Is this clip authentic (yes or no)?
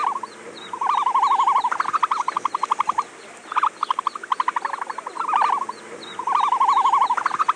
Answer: yes